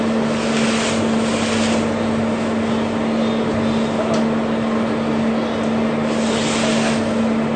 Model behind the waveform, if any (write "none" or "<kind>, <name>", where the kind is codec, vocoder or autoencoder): none